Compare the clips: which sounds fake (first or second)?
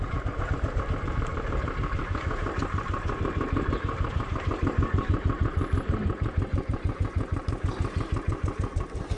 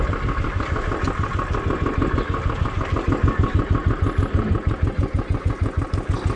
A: first